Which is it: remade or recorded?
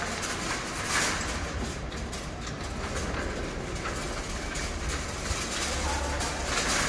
recorded